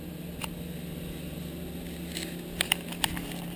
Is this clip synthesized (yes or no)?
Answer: no